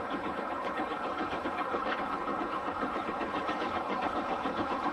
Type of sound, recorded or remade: remade